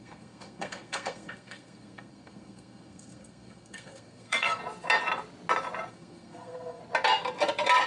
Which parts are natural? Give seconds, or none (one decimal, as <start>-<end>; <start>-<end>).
4.6-5.9; 6.8-7.9